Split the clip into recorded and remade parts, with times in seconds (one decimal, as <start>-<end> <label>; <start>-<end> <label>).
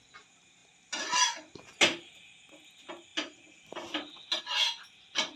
0.0-5.4 recorded